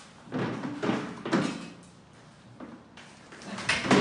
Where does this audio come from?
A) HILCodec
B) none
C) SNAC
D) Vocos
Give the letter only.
B